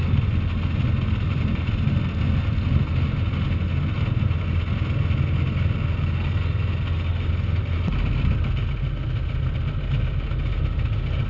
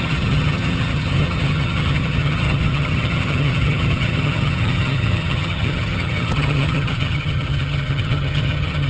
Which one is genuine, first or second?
first